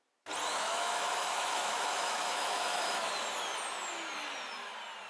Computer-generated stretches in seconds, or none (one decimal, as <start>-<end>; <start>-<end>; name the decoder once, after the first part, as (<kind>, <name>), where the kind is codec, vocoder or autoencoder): 0.5-3.1 (autoencoder, DAC-VAE)